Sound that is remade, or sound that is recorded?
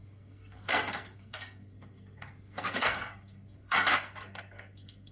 remade